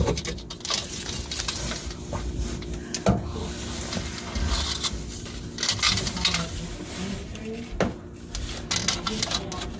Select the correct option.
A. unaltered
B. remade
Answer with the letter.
A